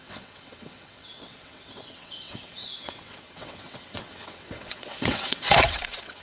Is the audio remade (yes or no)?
yes